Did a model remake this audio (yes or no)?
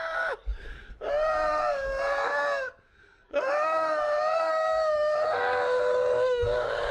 yes